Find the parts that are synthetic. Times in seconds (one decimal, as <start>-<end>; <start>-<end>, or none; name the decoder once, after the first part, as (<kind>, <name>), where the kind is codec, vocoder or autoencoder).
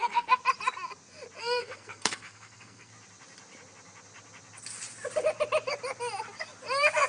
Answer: 0.0-0.4 (codec, SNAC); 1.4-2.9